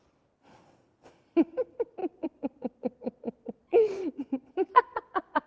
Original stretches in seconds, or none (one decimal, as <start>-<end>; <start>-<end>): 0.0-2.0